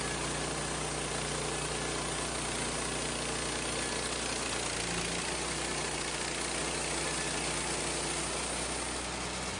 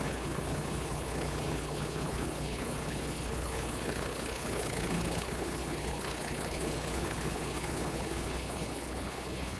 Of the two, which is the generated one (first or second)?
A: second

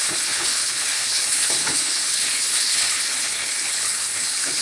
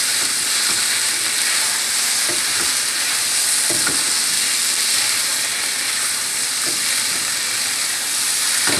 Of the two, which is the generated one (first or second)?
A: first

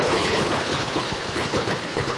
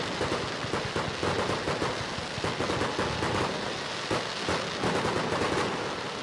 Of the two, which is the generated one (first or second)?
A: first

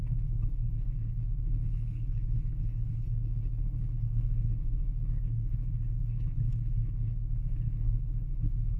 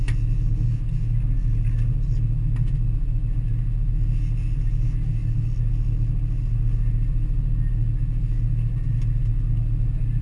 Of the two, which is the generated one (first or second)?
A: first